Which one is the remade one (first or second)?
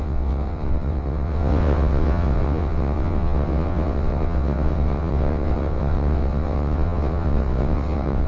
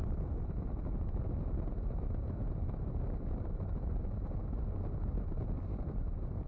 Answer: first